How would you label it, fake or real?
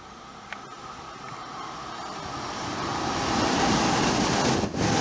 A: real